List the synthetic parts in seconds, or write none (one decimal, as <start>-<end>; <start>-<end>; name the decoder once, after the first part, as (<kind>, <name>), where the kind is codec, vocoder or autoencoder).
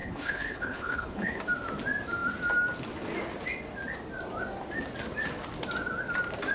0.0-1.4 (codec, HILCodec)